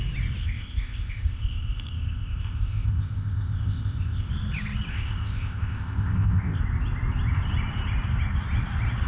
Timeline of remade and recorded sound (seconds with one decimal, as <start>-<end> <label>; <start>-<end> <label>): 0.0-0.4 recorded; 0.4-4.3 remade; 4.3-4.9 recorded; 4.9-6.6 remade; 6.6-9.1 recorded